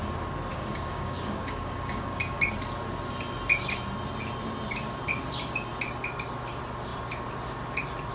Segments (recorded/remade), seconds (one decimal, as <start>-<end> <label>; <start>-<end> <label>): 0.0-0.5 recorded; 0.5-2.4 remade; 2.4-8.1 recorded